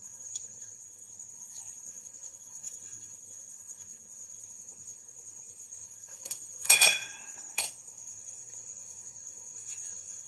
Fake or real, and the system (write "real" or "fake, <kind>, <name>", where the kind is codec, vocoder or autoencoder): fake, codec, SNAC